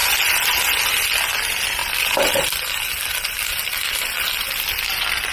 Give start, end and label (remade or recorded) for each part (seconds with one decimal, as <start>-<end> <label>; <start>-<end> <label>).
0.0-0.6 remade; 0.6-1.8 recorded; 1.8-5.3 remade